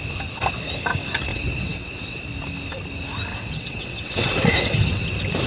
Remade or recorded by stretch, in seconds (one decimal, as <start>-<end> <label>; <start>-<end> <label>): 0.0-1.3 recorded; 1.3-2.2 remade; 2.2-3.3 recorded; 3.3-5.0 remade; 5.0-5.5 recorded